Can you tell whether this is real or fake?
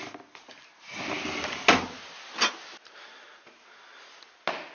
real